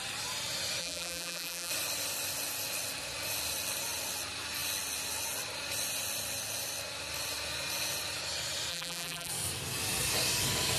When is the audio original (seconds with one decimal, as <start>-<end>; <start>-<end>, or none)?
0.0-0.8; 1.7-8.7; 9.3-10.8